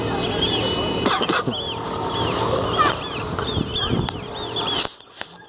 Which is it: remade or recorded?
recorded